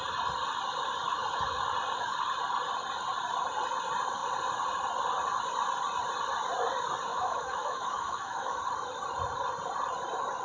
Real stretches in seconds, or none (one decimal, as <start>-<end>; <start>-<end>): 0.0-7.1; 8.6-10.4